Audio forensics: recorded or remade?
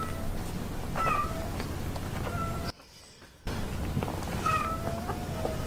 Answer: recorded